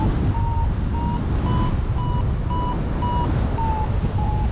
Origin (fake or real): real